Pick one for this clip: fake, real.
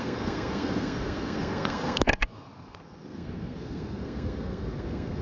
fake